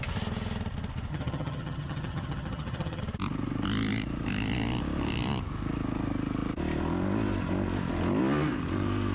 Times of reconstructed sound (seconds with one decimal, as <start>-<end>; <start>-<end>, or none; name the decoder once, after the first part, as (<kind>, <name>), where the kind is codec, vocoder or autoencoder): 1.1-3.0 (vocoder, HiFi-GAN)

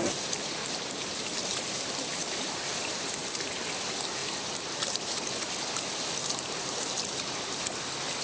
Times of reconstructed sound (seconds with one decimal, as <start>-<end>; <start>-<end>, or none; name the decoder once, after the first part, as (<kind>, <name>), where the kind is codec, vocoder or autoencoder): 0.6-3.6 (vocoder, BigVGAN v2); 4.2-5.5; 6.2-6.8

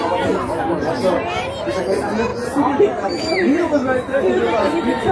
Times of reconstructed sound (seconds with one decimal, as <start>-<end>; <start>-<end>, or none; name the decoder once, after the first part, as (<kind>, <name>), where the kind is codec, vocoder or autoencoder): none